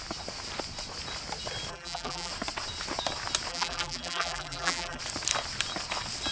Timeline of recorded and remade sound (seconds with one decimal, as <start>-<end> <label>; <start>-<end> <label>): 0.0-1.7 recorded; 1.7-2.3 remade; 2.3-3.5 recorded; 3.5-5.0 remade; 5.0-6.3 recorded